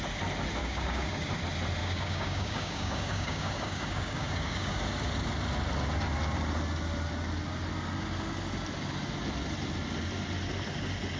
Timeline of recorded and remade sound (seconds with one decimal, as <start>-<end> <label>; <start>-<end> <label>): 0.0-0.6 recorded; 0.6-1.3 remade; 1.3-1.8 recorded; 1.8-4.8 remade; 4.8-11.2 recorded